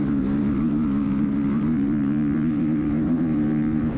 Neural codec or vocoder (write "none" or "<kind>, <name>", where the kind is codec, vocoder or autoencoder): vocoder, BigVGAN v2